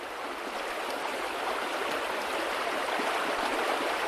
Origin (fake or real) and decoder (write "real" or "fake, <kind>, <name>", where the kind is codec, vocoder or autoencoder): real